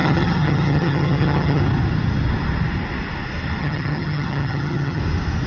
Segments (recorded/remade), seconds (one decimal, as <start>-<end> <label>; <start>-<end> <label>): 0.0-1.6 remade; 1.6-3.6 recorded; 3.6-5.0 remade; 5.0-5.5 recorded

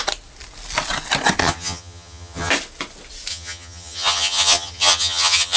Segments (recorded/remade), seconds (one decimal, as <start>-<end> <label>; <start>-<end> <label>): 0.0-1.4 recorded; 1.4-2.5 remade; 2.5-3.3 recorded; 3.3-5.6 remade

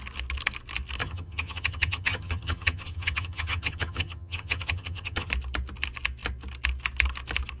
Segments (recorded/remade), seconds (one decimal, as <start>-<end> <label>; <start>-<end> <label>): 0.0-1.0 recorded; 1.0-5.3 remade; 5.3-7.6 recorded

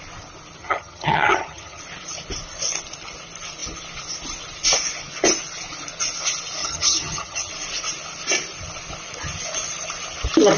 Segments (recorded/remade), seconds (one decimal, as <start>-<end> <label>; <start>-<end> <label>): 0.0-0.6 recorded; 0.6-1.8 remade; 1.8-6.6 recorded; 6.6-7.5 remade; 7.5-10.6 recorded

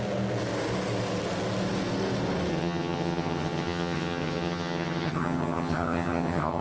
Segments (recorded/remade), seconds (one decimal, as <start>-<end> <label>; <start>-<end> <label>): 0.0-2.5 recorded; 2.5-6.6 remade

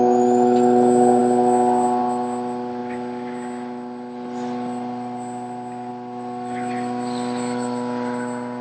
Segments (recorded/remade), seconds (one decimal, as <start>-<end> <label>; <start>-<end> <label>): 0.0-8.6 recorded

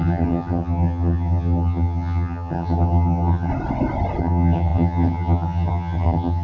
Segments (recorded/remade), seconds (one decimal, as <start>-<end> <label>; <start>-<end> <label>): 0.0-3.5 remade; 3.5-4.2 recorded; 4.2-6.4 remade